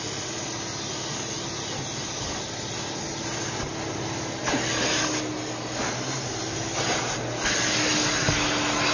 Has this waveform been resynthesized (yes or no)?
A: no